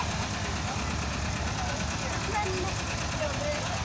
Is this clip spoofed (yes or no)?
no